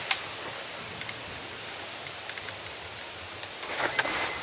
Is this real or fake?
real